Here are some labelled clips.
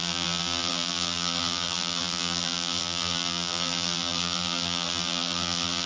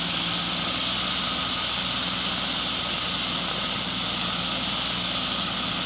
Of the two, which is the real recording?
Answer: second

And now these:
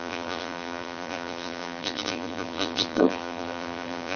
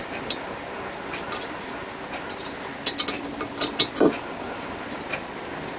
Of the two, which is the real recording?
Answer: second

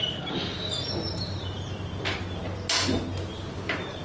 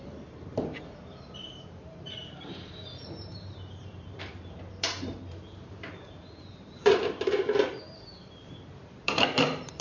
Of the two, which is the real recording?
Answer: first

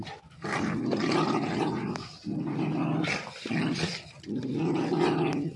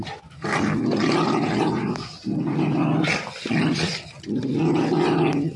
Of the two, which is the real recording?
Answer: second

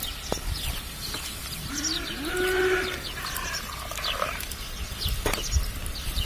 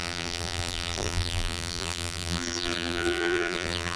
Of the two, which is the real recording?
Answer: first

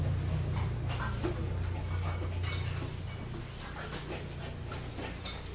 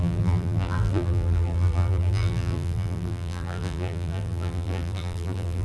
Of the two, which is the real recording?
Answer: first